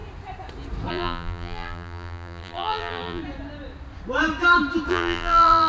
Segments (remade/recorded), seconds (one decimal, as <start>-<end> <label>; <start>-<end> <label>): 0.0-0.9 recorded; 0.9-3.2 remade; 3.2-4.9 recorded; 4.9-5.7 remade